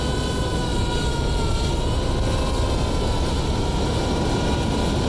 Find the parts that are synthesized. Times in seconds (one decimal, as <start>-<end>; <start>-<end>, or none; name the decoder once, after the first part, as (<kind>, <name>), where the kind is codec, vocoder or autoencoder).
none